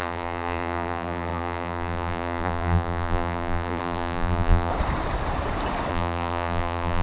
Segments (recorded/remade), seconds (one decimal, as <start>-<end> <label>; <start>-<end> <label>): 0.0-4.7 remade; 4.7-5.9 recorded; 5.9-7.0 remade